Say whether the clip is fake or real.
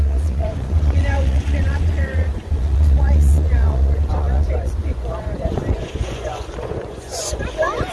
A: fake